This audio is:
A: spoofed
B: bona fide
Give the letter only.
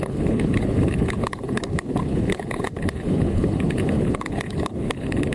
A